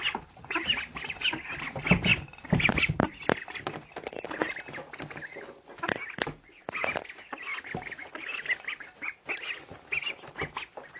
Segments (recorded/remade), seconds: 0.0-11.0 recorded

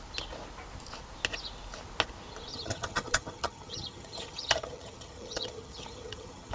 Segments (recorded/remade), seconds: 0.0-2.5 recorded; 2.5-6.5 remade

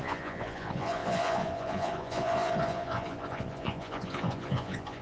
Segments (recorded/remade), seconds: 0.0-5.0 remade

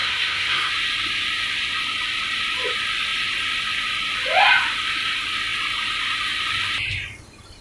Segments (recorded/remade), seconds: 0.0-0.7 remade; 0.7-7.6 recorded

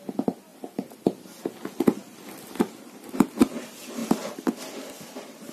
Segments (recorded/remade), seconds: 0.0-0.5 recorded; 0.5-1.4 remade; 1.4-2.0 recorded; 2.0-3.6 remade; 3.6-5.5 recorded

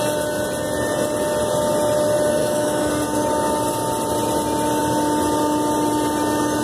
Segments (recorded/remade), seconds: 0.0-2.4 recorded; 2.4-2.9 remade; 2.9-6.6 recorded

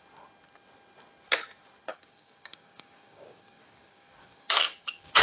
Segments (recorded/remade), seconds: 0.0-1.9 recorded; 1.9-5.2 remade